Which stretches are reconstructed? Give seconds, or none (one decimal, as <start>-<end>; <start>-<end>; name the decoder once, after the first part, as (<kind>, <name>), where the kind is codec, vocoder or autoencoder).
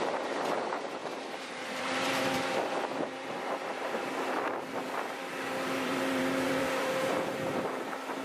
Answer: 0.0-1.0 (vocoder, BigVGAN v2); 1.8-8.2